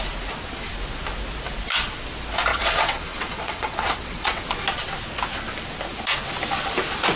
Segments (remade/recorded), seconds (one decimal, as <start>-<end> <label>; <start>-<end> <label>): 0.0-2.5 recorded; 2.5-4.4 remade; 4.4-7.2 recorded